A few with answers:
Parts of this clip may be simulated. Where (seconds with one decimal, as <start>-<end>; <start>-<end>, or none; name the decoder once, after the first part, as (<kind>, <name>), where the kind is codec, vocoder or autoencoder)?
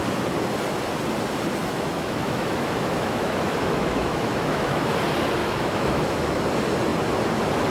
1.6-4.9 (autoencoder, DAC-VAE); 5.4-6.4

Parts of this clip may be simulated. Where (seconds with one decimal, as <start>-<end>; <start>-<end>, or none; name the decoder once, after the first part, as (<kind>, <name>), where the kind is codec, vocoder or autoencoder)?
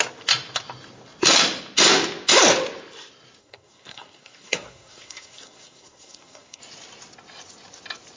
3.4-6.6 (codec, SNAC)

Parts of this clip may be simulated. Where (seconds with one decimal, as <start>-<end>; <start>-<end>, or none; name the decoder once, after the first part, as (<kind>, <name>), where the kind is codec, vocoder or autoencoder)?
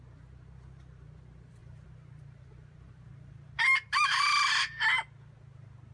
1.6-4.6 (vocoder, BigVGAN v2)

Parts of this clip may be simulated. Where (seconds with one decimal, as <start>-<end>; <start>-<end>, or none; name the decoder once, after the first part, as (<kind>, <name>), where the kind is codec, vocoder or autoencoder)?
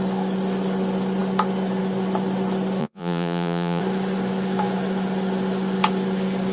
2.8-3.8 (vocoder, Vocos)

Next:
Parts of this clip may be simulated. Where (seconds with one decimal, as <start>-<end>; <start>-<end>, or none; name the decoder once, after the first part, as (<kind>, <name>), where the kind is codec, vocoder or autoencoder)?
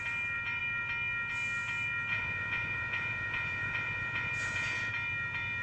2.1-4.9 (vocoder, Vocos)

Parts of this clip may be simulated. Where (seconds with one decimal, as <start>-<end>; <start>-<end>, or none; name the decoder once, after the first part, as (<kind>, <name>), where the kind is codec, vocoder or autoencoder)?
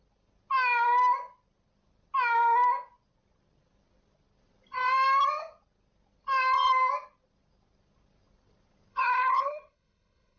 8.9-10.4 (codec, HILCodec)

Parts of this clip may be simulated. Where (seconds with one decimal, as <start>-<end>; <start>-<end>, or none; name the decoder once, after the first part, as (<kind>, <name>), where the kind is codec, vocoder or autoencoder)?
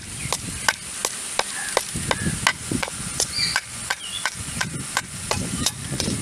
2.5-6.2 (vocoder, Vocos)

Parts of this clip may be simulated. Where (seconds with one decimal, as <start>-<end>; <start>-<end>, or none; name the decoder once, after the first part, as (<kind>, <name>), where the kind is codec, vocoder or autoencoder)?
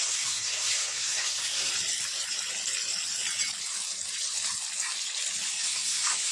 0.0-1.7 (codec, SNAC); 5.5-6.3